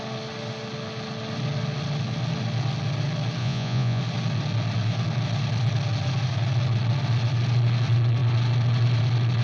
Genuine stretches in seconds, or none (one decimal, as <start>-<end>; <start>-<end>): 0.0-3.4; 4.0-9.4